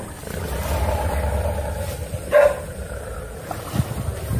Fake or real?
real